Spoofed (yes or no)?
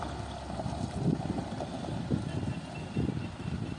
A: no